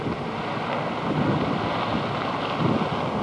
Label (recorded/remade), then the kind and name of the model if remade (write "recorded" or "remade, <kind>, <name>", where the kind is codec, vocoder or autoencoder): recorded